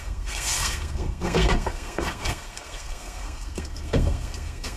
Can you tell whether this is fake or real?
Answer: fake